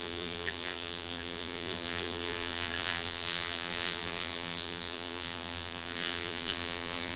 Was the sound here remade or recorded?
remade